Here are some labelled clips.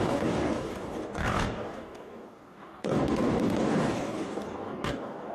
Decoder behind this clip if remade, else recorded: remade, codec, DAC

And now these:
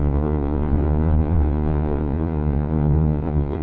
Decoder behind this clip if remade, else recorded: remade, vocoder, Vocos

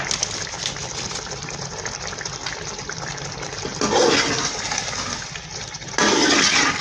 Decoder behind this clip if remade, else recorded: recorded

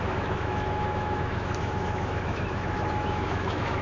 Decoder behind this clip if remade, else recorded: remade, autoencoder, DAC-VAE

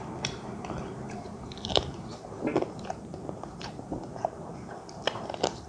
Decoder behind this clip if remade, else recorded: remade, vocoder, BigVGAN v2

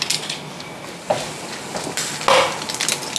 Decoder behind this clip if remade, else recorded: recorded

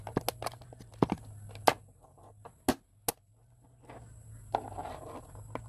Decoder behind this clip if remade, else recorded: recorded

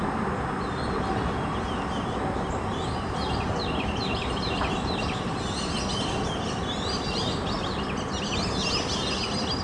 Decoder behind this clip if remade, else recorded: recorded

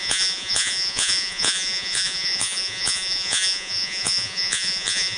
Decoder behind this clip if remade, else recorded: remade, vocoder, Vocos